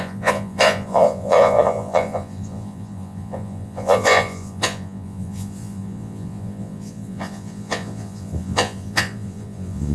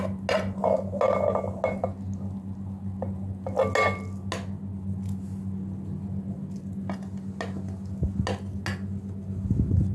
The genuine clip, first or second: second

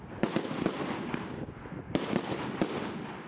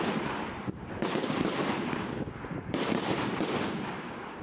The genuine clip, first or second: first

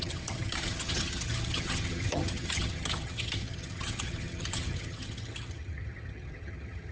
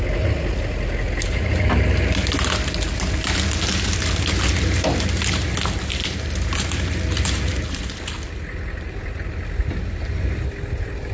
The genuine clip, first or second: second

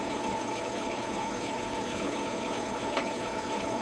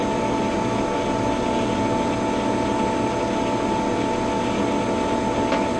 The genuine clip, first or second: second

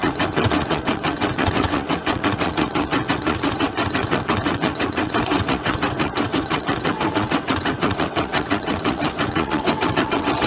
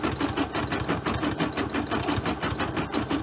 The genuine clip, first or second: second